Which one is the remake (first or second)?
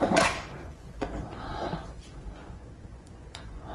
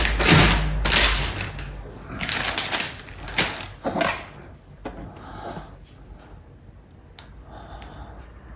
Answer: first